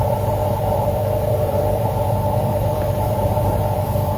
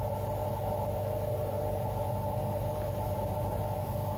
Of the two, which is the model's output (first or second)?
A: first